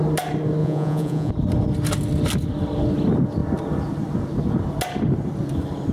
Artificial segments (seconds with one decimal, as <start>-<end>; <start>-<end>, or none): 0.6-1.3